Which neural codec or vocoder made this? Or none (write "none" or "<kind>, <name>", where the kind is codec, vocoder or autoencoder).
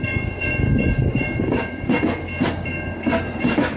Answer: codec, DAC